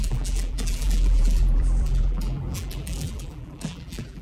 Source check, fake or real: fake